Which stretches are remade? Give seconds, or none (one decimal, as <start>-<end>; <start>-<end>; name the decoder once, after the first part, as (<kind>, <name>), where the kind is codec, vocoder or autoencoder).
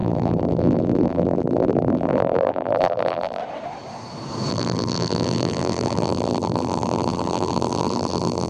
0.0-3.4 (vocoder, BigVGAN v2); 4.5-8.5